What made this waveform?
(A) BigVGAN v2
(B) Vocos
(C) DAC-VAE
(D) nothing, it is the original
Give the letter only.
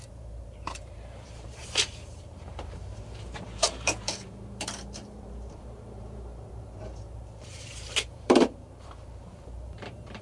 A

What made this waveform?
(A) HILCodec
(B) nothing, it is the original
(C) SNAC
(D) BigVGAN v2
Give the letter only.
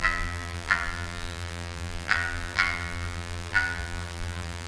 D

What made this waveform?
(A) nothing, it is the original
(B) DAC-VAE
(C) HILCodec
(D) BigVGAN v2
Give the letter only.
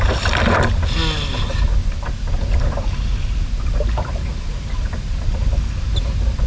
A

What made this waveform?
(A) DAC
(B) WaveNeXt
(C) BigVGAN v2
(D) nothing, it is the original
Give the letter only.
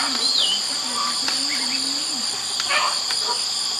D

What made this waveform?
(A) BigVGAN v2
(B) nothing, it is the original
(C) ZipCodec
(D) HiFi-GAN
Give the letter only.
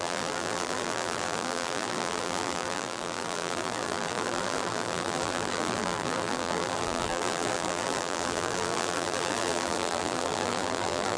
A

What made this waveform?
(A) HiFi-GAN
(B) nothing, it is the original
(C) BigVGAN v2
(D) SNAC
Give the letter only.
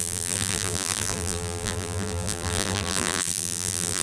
C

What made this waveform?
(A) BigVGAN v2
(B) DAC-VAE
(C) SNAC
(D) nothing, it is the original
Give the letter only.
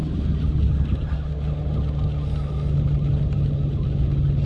D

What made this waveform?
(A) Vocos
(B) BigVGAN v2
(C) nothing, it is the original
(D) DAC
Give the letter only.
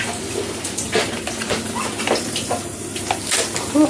C